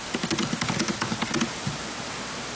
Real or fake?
real